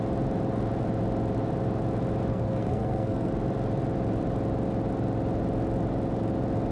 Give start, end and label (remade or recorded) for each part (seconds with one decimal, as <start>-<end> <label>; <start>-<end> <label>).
0.0-2.3 recorded; 2.3-3.3 remade; 3.3-6.7 recorded